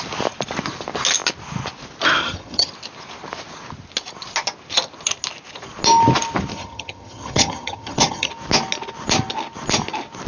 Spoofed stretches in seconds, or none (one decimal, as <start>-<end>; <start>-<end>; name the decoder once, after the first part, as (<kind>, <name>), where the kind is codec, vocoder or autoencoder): 2.2-2.7 (vocoder, HiFi-GAN); 6.5-8.3